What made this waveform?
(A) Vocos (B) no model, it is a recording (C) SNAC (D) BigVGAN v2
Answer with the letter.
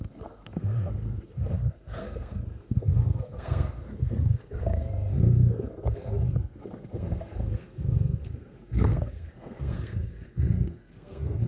C